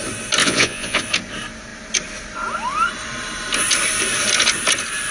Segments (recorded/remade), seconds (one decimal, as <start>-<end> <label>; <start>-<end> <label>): 0.0-0.4 recorded; 0.4-1.0 remade; 1.0-5.1 recorded